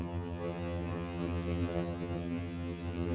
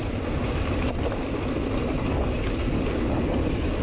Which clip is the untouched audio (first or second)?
second